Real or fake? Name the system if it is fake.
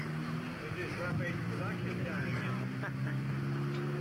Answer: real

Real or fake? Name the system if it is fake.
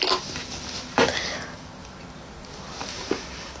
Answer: real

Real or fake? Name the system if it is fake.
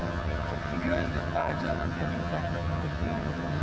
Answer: fake, vocoder, HiFi-GAN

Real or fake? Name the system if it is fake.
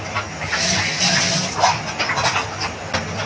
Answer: real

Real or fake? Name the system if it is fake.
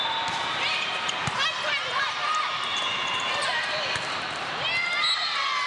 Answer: real